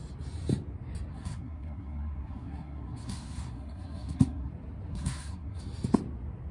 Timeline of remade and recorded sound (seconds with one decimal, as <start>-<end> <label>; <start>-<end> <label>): 0.0-1.1 recorded; 1.1-4.5 remade; 4.5-4.9 recorded; 4.9-5.6 remade; 5.6-6.5 recorded